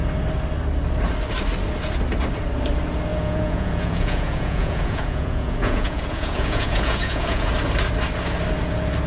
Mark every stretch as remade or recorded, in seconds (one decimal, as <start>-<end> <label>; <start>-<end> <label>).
0.0-3.1 recorded; 3.1-7.5 remade; 7.5-9.1 recorded